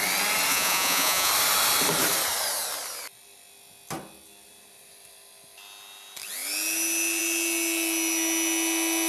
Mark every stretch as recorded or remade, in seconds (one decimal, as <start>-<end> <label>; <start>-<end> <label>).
0.0-0.5 recorded; 0.5-1.3 remade; 1.3-9.1 recorded